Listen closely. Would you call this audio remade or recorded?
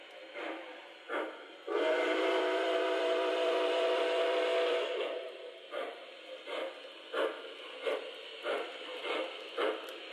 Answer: remade